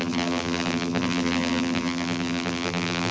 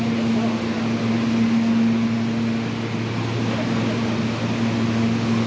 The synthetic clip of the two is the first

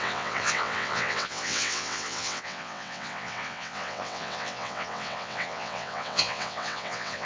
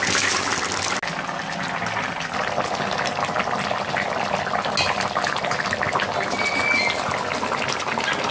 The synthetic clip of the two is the first